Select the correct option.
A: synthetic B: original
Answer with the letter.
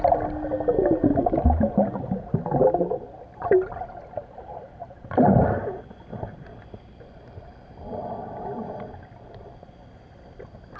B